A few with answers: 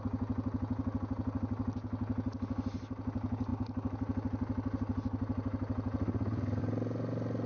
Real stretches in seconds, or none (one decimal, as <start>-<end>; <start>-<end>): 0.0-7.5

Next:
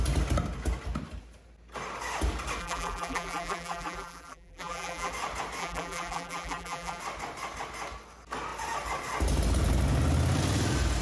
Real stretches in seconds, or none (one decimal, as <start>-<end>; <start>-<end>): 0.0-2.6; 5.1-5.6; 7.0-11.0

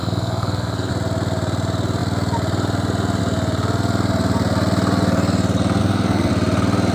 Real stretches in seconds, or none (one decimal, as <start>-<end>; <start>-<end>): 0.9-5.8; 6.3-6.9

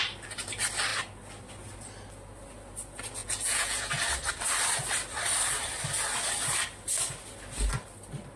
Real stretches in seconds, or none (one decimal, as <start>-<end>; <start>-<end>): 0.0-3.2; 3.9-8.4

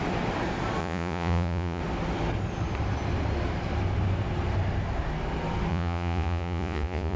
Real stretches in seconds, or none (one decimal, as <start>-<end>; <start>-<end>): 0.0-0.8; 1.8-5.7

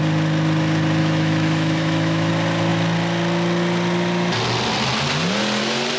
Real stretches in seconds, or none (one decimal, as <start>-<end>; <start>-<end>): 0.0-1.0; 2.3-6.0

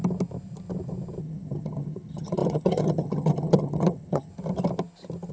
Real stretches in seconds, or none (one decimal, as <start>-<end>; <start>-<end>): 0.0-1.2; 4.3-5.3

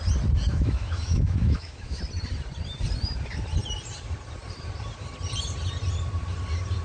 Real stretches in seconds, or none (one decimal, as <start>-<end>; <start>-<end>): 0.0-0.5; 2.0-6.8